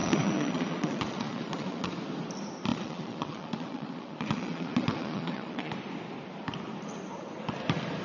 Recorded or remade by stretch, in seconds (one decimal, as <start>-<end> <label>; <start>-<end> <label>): 0.0-1.9 remade; 1.9-2.7 recorded; 2.7-5.7 remade; 5.7-8.0 recorded